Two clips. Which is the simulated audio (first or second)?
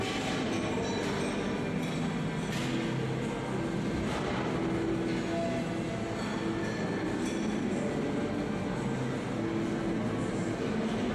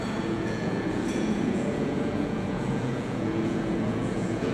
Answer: second